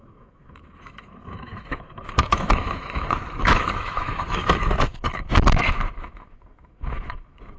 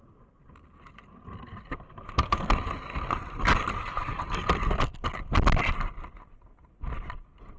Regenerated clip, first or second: first